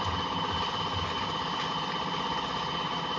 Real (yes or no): yes